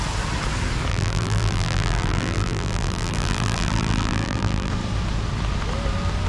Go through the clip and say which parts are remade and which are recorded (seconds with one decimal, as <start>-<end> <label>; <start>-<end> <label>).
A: 0.0-0.9 recorded; 0.9-4.7 remade; 4.7-6.3 recorded